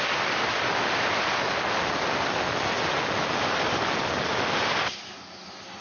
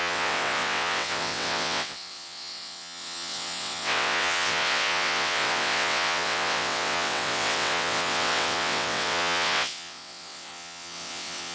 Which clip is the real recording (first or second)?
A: first